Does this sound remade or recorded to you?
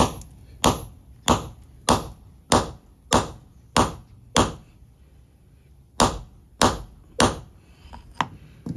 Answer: recorded